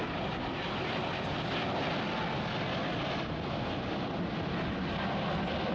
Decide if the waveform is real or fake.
real